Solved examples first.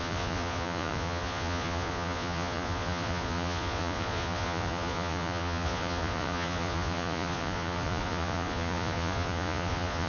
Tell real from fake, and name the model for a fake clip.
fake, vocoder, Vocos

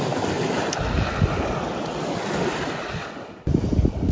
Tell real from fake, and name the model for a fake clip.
real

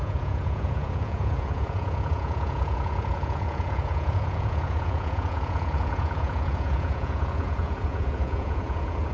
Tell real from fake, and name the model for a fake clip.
fake, vocoder, Vocos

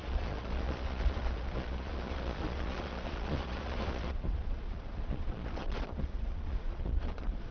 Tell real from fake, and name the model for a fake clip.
fake, vocoder, Vocos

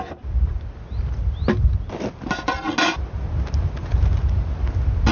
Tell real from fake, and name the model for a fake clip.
real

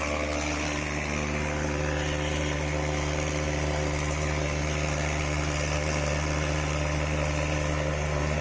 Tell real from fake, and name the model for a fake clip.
real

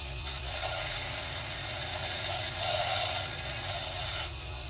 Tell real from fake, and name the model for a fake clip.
fake, vocoder, Vocos